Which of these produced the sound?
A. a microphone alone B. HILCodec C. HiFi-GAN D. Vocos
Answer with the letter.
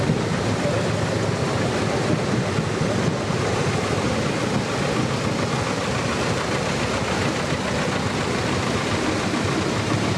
A